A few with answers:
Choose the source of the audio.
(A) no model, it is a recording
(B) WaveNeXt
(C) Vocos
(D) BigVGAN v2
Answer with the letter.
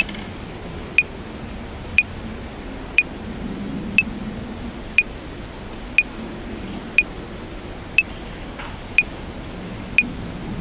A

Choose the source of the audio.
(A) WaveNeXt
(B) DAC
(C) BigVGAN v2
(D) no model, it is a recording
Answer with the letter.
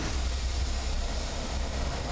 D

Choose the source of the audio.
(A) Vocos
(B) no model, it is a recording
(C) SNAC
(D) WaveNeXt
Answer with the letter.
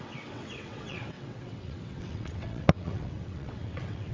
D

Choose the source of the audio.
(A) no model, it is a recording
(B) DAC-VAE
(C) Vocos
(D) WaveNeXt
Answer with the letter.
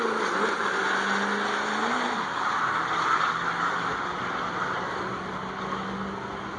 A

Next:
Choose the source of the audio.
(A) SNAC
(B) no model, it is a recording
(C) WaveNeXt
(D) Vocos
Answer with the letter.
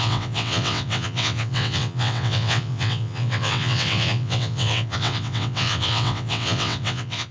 C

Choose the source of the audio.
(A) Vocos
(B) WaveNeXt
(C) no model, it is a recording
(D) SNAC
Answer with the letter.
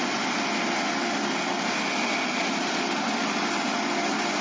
C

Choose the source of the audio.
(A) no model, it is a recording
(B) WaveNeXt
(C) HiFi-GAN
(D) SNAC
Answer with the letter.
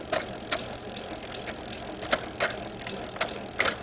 A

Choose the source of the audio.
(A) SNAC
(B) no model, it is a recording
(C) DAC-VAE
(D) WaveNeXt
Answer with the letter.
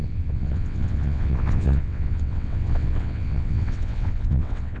D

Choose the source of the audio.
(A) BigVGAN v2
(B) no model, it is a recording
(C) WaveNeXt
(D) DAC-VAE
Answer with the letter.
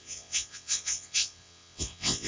C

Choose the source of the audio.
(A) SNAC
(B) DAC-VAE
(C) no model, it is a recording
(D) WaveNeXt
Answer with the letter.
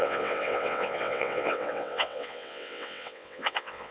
D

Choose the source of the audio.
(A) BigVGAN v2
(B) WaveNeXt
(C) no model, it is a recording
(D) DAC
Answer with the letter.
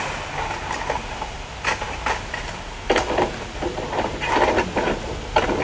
C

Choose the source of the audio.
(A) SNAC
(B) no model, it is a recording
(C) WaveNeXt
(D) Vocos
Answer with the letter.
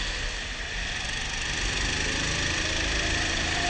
B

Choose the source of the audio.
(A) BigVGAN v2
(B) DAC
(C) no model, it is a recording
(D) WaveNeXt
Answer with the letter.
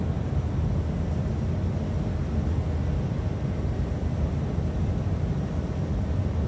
C